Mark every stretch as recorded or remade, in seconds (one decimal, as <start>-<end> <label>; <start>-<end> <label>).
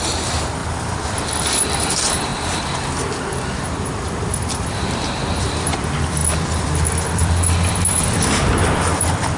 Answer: 0.0-9.4 remade